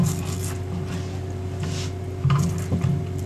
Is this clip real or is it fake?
real